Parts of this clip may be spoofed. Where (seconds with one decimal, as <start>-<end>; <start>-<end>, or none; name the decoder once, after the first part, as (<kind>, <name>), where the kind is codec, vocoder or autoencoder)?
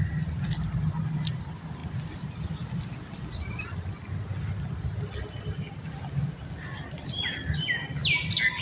none